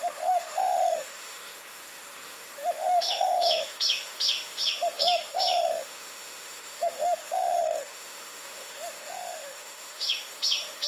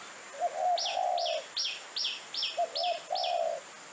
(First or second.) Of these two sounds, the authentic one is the second